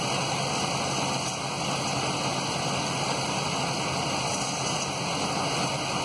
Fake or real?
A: real